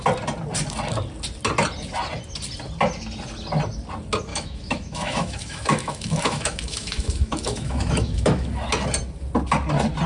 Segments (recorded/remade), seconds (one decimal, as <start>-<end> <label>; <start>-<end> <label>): 0.0-4.3 recorded; 4.3-8.5 remade; 8.5-10.1 recorded